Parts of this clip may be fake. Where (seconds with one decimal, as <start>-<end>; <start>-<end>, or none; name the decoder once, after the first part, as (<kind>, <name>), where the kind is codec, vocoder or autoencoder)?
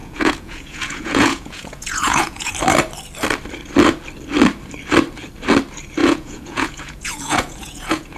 0.0-2.5 (vocoder, Vocos); 6.0-8.2